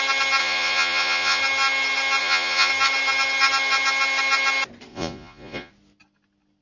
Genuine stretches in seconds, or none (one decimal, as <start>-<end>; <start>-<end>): 0.0-0.4; 1.4-2.2; 2.7-4.9; 5.7-6.6